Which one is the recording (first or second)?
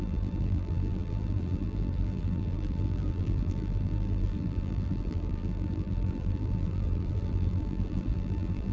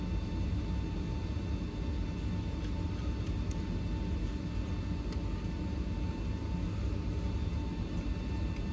second